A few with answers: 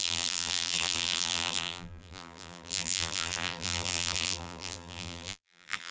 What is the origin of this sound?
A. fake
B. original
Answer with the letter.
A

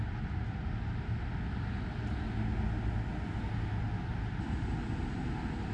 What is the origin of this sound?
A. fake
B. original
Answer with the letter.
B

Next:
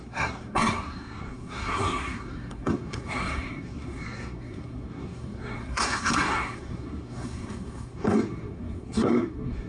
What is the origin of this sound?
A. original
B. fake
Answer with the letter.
B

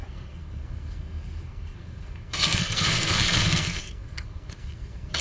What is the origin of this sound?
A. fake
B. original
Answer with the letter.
A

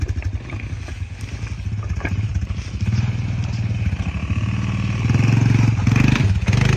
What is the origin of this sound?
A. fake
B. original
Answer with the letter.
B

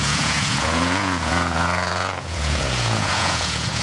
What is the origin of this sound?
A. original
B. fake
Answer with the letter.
B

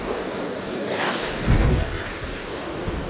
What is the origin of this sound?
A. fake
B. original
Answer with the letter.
A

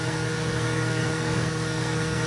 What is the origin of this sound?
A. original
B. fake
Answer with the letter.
B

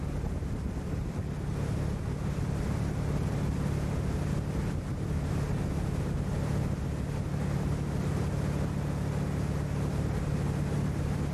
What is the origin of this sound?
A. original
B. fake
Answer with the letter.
A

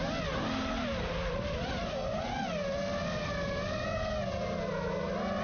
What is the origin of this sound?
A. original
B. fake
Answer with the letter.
A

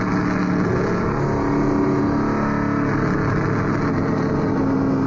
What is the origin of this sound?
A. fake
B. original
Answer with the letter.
B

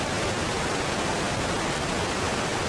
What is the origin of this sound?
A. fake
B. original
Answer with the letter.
B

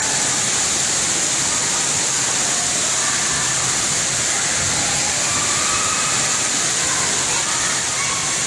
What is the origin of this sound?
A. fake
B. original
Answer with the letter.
B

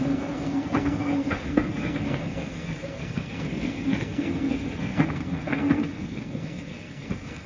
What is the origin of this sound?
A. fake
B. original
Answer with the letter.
A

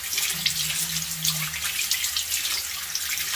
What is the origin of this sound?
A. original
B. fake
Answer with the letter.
A